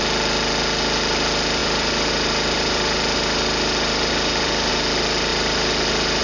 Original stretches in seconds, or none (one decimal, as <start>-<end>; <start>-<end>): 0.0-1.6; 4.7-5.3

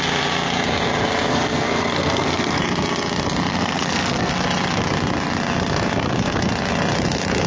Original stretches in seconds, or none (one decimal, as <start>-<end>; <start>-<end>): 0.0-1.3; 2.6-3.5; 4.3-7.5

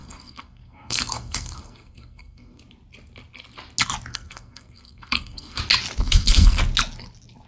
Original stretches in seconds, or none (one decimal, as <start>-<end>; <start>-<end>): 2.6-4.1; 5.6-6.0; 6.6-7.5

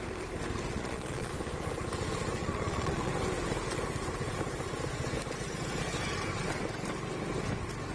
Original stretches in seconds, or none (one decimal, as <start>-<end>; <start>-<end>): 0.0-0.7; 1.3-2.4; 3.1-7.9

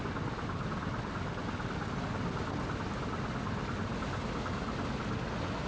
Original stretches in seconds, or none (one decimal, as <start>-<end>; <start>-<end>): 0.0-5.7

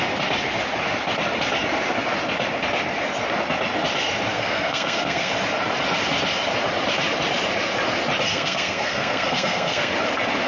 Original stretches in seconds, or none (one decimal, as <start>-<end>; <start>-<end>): 0.0-4.3; 5.3-8.3; 9.9-10.5